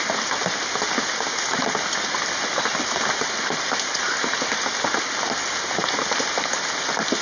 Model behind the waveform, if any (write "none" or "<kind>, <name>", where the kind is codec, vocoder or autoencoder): none